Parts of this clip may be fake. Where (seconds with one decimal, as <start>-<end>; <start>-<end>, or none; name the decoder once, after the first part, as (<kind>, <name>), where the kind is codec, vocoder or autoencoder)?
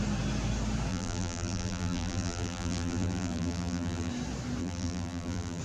0.9-4.1 (vocoder, BigVGAN v2); 4.6-5.6